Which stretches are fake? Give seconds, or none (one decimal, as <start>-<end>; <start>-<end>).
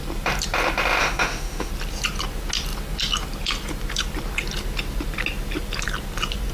1.0-1.7